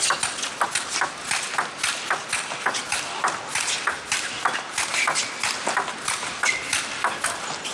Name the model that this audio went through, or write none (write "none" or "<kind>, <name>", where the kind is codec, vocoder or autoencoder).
none